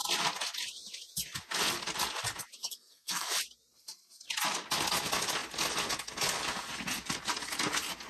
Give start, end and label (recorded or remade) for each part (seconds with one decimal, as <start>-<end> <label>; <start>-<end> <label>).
0.0-2.6 recorded; 2.6-3.3 remade; 3.3-8.1 recorded